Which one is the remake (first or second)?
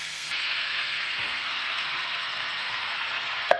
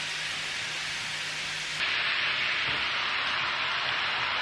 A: first